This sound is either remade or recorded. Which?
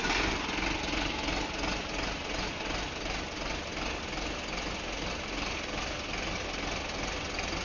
recorded